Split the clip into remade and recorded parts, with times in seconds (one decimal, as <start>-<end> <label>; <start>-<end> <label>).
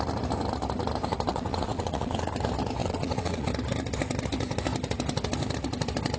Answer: 0.0-1.3 recorded; 1.3-2.3 remade; 2.3-2.8 recorded; 2.8-3.5 remade; 3.5-6.2 recorded